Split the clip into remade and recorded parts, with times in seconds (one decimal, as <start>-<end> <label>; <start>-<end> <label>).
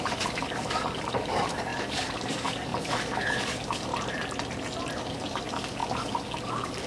0.0-3.9 remade; 3.9-5.0 recorded; 5.0-6.9 remade